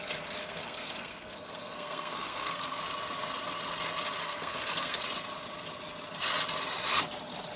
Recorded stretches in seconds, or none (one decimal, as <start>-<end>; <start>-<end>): 0.0-0.4; 2.8-4.2; 5.0-7.6